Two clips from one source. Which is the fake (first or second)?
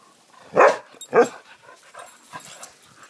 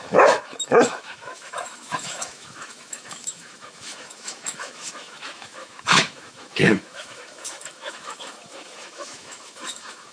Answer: second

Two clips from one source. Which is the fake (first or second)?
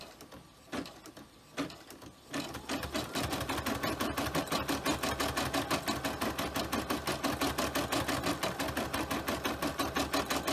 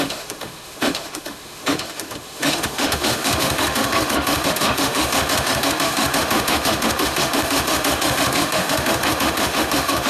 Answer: second